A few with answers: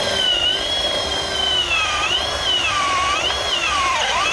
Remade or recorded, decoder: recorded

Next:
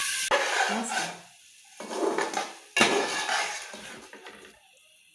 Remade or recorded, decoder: recorded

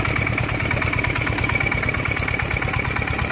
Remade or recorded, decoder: recorded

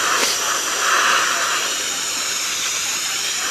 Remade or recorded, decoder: remade, vocoder, BigVGAN v2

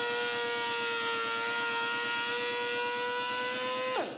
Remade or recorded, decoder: recorded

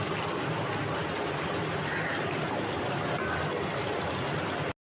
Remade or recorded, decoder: recorded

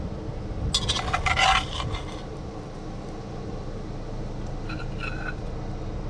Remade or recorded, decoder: recorded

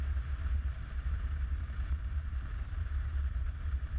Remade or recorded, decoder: remade, vocoder, BigVGAN v2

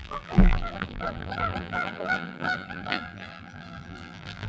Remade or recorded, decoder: remade, vocoder, BigVGAN v2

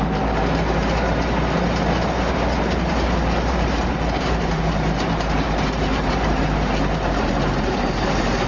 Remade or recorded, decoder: remade, vocoder, BigVGAN v2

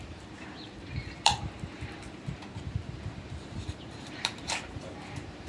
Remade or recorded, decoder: remade, vocoder, BigVGAN v2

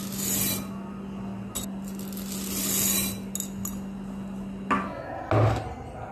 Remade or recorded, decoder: recorded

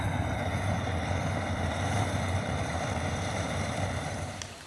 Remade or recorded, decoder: remade, vocoder, BigVGAN v2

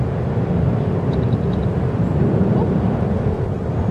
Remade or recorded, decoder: recorded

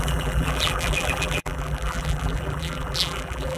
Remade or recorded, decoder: remade, vocoder, BigVGAN v2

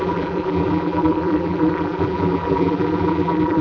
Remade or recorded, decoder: remade, vocoder, BigVGAN v2